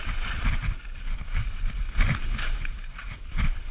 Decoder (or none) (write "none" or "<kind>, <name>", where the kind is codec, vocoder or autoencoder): none